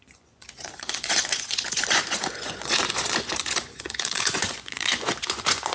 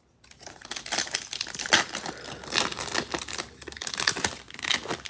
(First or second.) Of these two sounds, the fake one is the first